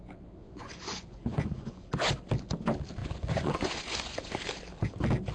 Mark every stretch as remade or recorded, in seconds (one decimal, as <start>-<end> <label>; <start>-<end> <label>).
0.0-0.4 recorded; 0.4-1.9 remade; 1.9-3.0 recorded; 3.0-4.4 remade; 4.4-5.3 recorded

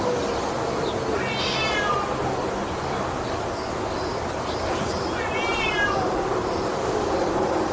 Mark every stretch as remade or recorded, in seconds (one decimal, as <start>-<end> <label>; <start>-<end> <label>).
0.0-7.7 recorded